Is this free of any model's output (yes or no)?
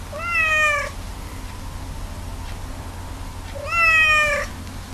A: yes